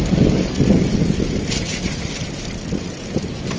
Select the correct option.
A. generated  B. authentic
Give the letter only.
B